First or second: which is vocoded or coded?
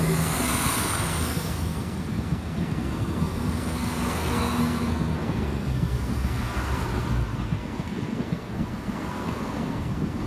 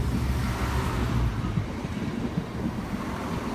first